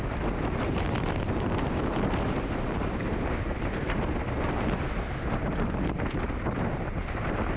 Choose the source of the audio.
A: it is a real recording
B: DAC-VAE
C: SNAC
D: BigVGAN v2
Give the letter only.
A